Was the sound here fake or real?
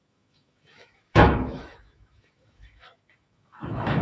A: fake